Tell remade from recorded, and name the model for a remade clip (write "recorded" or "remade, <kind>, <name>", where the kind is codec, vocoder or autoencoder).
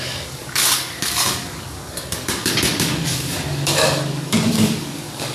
remade, codec, DAC